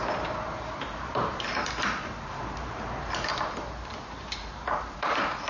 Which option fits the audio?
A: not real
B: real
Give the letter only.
A